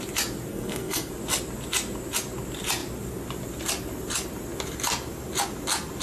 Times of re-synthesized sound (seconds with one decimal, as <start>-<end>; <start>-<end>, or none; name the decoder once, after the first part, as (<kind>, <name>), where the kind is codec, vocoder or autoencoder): 0.5-1.1 (codec, SNAC)